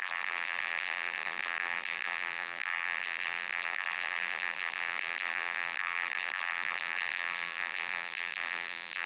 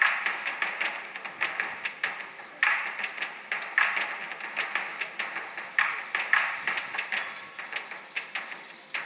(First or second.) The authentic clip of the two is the second